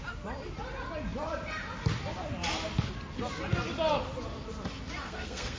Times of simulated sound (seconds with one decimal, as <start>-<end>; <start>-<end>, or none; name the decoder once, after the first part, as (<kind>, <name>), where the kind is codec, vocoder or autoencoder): 5.0-5.6 (codec, SNAC)